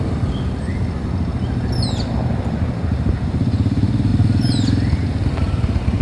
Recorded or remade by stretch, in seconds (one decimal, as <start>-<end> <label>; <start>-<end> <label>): 0.0-6.0 recorded